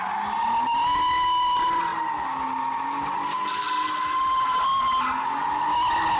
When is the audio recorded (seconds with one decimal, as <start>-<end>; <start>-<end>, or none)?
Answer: 0.0-6.2